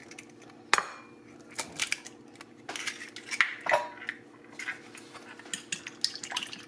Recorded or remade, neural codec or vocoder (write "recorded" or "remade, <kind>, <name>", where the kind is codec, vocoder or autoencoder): recorded